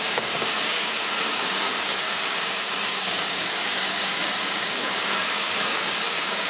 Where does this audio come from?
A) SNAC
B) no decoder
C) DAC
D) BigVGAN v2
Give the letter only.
C